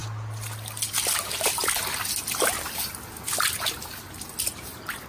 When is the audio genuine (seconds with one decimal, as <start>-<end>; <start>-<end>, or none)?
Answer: 0.0-5.1